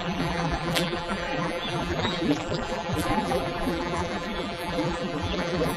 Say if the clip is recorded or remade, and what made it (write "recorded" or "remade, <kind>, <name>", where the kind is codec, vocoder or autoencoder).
remade, vocoder, BigVGAN v2